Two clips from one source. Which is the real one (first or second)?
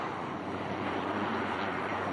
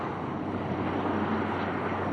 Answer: second